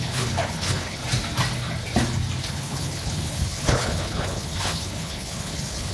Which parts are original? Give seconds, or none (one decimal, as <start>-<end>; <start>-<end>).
1.0-2.5